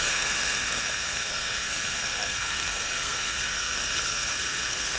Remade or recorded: remade